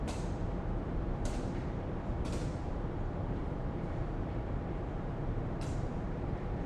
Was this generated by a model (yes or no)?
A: yes